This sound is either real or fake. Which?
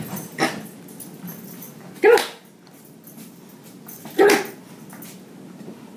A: real